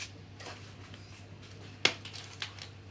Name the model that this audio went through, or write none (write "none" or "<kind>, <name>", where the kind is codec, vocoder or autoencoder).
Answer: none